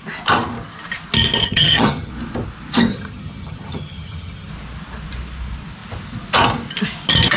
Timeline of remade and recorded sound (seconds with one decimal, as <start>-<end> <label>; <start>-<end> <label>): 0.0-1.4 recorded; 1.4-2.1 remade; 2.1-2.9 recorded; 2.9-4.5 remade; 4.5-7.4 recorded